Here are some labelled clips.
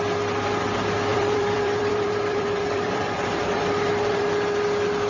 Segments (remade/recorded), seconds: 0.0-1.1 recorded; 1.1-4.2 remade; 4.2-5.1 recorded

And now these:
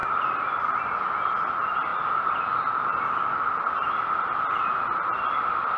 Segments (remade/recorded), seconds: 0.0-0.6 remade; 0.6-1.9 recorded; 1.9-2.4 remade; 2.4-2.9 recorded; 2.9-3.5 remade; 3.5-5.8 recorded

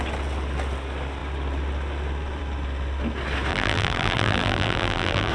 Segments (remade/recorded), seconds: 0.0-3.5 recorded; 3.5-5.3 remade

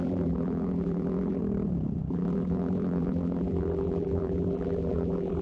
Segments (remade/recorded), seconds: 0.0-1.4 remade; 1.4-2.1 recorded; 2.1-5.4 remade

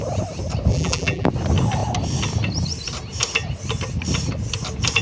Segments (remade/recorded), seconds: 0.0-0.7 recorded; 0.7-1.3 remade; 1.3-5.0 recorded